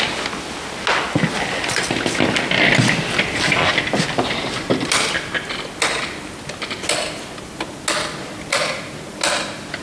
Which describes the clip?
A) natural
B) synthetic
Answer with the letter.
A